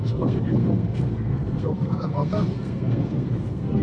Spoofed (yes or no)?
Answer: yes